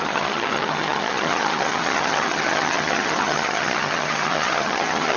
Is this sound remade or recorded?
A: remade